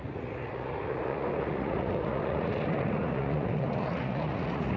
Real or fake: fake